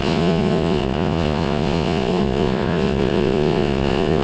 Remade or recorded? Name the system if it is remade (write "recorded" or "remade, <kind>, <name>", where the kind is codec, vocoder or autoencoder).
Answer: remade, vocoder, Vocos